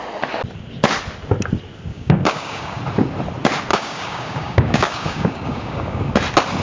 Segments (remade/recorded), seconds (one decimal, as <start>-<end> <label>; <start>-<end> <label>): 0.0-1.9 recorded; 1.9-2.8 remade; 2.8-3.7 recorded; 3.7-6.1 remade; 6.1-6.6 recorded